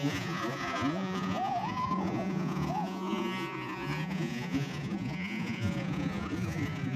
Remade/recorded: remade